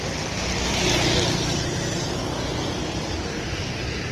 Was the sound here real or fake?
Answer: real